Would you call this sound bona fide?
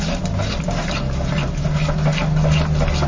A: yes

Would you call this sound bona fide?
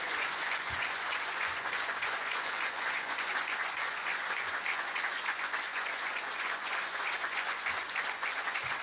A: no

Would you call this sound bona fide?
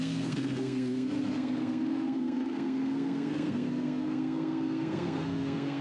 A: no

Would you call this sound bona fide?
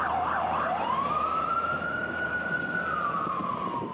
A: no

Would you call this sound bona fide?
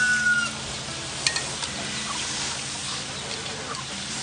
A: yes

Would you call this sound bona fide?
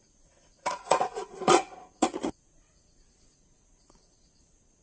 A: no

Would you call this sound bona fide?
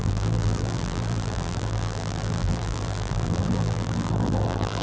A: no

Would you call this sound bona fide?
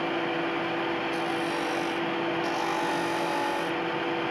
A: yes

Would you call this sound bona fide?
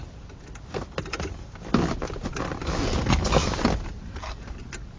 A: yes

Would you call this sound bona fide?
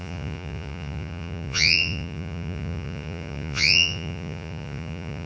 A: no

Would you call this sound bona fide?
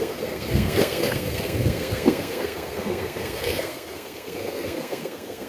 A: no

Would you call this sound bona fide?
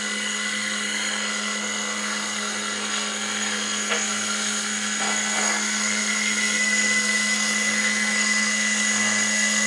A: no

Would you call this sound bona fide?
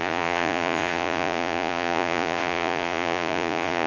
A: no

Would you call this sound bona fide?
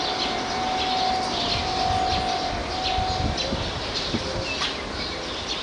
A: yes